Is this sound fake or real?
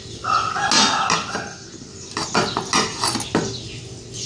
real